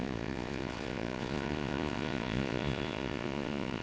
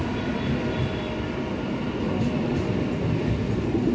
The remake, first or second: first